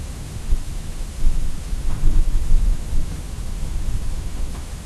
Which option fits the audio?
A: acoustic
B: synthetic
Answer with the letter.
B